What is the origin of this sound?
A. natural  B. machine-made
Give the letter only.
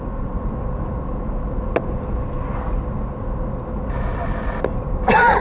A